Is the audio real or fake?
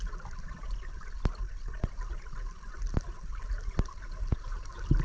real